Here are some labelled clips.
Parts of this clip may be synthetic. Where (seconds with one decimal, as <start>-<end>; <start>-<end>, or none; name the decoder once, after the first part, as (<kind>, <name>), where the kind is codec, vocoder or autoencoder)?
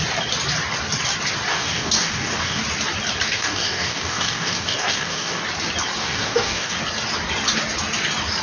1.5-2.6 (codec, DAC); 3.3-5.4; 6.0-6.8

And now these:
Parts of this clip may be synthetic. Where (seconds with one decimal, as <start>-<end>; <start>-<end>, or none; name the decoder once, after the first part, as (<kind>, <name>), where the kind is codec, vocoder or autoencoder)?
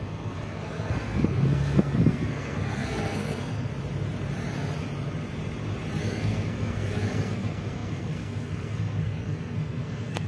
0.0-3.7 (codec, SNAC); 6.0-10.3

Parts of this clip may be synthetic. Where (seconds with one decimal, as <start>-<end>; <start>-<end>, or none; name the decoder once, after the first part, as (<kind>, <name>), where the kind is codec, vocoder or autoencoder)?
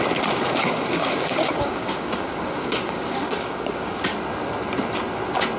0.6-4.0 (codec, DAC)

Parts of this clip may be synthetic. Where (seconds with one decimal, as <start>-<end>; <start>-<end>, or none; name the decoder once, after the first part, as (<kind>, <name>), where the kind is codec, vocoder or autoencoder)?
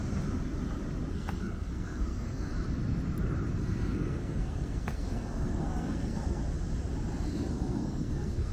1.1-2.5 (codec, SNAC); 3.6-6.4; 7.3-8.5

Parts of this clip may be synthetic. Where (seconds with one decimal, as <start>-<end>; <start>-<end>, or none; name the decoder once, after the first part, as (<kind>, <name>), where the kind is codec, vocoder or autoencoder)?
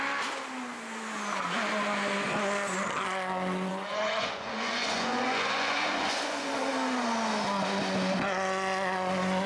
3.7-6.5 (vocoder, Vocos)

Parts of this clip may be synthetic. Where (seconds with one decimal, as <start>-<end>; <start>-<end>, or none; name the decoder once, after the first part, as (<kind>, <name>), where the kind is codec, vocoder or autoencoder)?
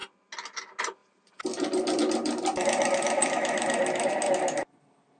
1.0-4.1 (vocoder, BigVGAN v2)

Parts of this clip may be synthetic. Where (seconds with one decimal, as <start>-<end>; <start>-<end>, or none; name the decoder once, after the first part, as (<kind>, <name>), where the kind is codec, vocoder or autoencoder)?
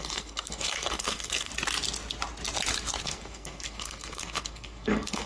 0.0-1.5 (codec, SNAC); 3.0-5.3